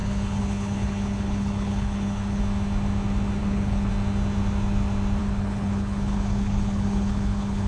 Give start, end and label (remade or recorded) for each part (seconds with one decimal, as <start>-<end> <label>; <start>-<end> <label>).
0.0-2.4 remade; 2.4-3.4 recorded; 3.4-3.9 remade; 3.9-5.2 recorded; 5.2-7.7 remade